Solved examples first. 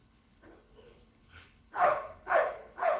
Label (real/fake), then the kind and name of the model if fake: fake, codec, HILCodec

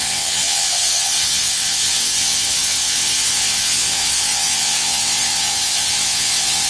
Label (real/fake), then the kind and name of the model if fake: fake, vocoder, WaveNeXt